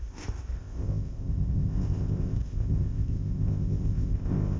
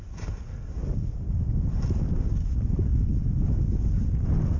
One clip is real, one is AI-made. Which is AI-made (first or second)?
first